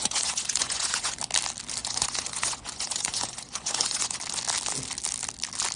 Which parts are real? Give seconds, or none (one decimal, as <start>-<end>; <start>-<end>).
1.2-1.8; 4.2-5.8